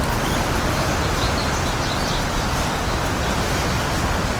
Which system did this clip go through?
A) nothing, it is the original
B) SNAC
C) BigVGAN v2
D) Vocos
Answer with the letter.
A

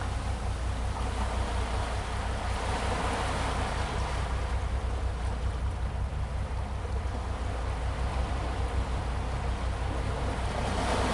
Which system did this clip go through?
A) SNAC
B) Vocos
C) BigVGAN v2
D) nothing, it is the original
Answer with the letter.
D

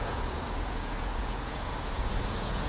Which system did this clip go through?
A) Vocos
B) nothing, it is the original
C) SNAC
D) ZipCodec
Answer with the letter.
A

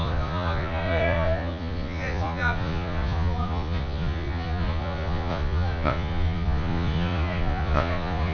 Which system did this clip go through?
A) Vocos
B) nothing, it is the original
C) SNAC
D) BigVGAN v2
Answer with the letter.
A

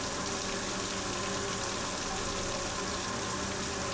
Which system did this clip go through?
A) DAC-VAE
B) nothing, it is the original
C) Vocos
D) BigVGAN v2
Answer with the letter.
B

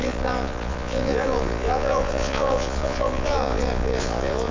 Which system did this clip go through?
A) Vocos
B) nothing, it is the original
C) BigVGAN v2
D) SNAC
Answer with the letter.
A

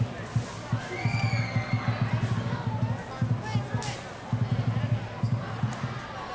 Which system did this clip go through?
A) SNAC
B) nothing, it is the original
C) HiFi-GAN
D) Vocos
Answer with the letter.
B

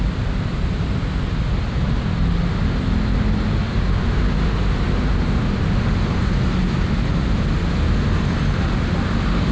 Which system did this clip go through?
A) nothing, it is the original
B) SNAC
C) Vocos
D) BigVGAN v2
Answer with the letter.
A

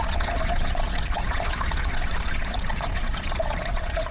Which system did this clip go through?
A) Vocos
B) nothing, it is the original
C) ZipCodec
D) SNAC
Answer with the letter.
A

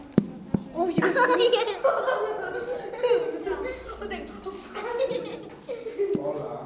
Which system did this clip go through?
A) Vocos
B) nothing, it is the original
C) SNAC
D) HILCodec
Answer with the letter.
B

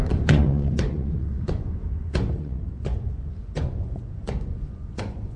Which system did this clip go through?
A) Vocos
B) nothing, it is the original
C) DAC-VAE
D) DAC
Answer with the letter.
A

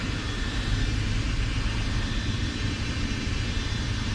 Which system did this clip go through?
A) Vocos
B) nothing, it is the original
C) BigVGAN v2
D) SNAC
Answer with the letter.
B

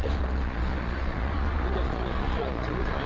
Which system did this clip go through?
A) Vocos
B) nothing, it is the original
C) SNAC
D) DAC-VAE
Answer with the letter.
A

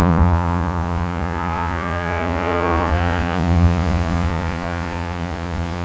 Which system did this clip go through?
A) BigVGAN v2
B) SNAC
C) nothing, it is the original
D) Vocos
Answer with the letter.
D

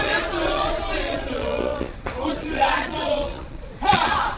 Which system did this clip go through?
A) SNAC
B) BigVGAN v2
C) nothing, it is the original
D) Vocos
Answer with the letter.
D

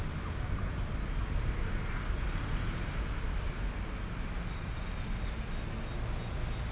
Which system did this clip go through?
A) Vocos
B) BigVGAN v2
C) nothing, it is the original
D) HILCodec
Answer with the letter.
C